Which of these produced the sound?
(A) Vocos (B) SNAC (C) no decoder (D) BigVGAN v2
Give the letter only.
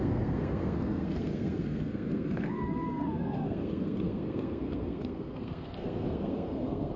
B